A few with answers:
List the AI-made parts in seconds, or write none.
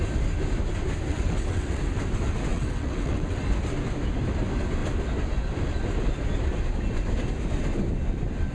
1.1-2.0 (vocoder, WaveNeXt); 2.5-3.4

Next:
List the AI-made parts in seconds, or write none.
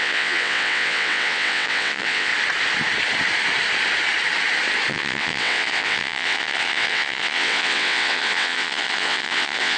0.0-2.3 (vocoder, WaveNeXt); 4.9-9.8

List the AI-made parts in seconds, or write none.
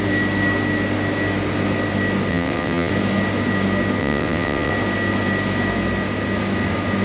2.3-2.9 (vocoder, WaveNeXt); 4.0-4.7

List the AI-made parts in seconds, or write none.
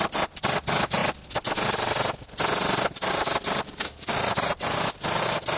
none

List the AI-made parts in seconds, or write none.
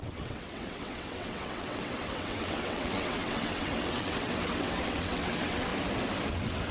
0.0-5.7 (vocoder, WaveNeXt); 6.3-6.7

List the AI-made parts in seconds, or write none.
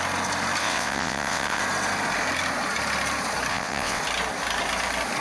0.6-1.6 (vocoder, WaveNeXt); 3.5-4.0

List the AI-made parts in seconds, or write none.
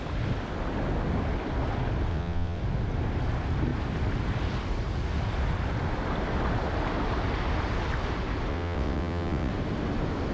2.1-2.6 (vocoder, WaveNeXt); 8.5-9.5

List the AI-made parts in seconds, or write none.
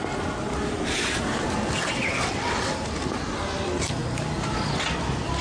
2.0-2.7 (vocoder, WaveNeXt)